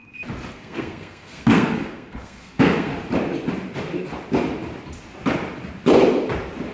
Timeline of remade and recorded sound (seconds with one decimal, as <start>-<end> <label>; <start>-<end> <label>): 0.0-0.5 recorded; 0.5-2.9 remade; 2.9-6.7 recorded